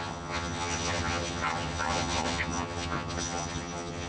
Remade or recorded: remade